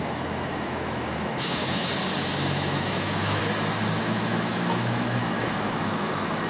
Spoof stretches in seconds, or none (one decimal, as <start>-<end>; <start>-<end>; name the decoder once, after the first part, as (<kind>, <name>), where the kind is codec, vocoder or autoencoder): 0.0-1.9 (autoencoder, DAC-VAE); 2.4-3.4; 4.0-6.5